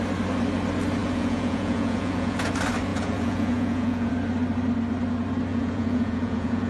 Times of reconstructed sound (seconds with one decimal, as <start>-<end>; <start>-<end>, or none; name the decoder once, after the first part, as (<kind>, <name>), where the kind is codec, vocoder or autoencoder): 1.0-2.5 (vocoder, Vocos); 2.9-4.1; 5.5-6.7